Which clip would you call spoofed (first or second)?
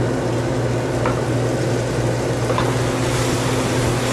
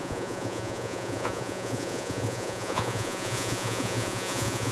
second